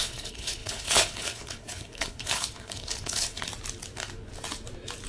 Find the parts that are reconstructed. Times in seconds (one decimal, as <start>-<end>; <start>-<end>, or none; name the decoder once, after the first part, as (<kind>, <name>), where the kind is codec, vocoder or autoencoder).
0.0-3.5 (codec, HILCodec)